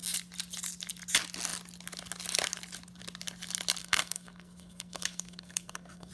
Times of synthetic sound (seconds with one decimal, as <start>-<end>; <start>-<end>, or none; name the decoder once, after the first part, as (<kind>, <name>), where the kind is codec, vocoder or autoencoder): 3.8-6.1 (codec, SNAC)